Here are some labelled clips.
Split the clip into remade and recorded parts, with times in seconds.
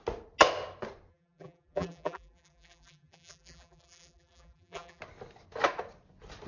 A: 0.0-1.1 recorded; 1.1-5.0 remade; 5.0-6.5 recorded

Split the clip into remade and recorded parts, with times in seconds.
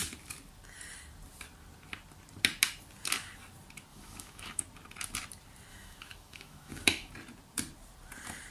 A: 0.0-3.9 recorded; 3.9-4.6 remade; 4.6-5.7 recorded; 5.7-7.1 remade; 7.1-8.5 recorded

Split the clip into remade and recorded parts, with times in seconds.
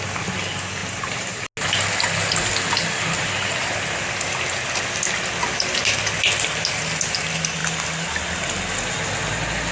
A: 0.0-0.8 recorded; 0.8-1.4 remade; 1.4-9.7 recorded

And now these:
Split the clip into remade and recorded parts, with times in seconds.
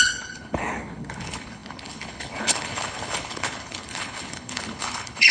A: 0.0-5.3 remade